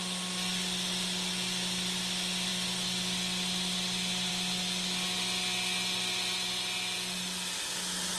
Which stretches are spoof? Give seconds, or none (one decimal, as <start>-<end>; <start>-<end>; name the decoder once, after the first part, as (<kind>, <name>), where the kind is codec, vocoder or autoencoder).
none